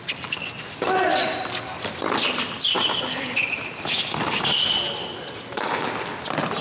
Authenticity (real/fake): real